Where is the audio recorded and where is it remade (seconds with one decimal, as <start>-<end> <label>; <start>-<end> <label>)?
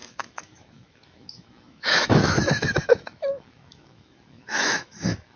0.0-5.4 remade